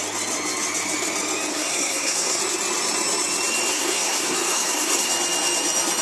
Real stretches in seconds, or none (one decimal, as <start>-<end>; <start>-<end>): 0.0-1.5; 2.4-3.7; 5.1-6.0